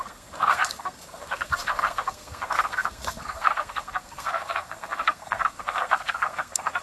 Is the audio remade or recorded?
remade